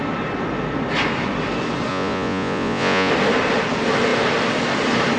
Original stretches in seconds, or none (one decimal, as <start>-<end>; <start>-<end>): 0.0-1.9; 3.1-5.2